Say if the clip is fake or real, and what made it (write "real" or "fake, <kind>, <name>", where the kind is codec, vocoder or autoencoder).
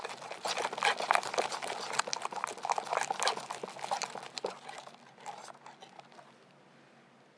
real